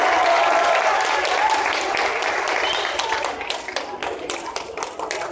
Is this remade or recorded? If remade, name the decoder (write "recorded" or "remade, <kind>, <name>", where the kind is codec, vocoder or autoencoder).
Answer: recorded